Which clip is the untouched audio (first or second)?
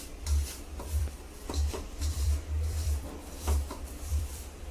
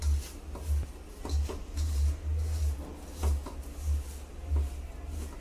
second